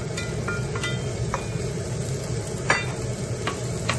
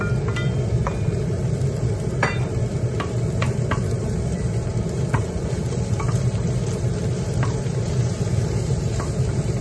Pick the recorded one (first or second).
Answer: first